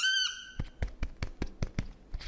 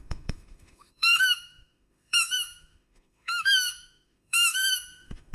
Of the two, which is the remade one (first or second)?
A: second